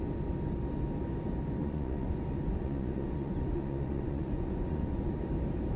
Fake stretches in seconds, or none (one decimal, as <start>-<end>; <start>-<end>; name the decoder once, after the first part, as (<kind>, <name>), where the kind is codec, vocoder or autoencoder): 1.6-5.1 (vocoder, Vocos)